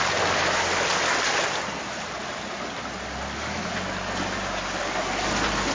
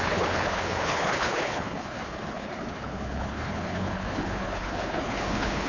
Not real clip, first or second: second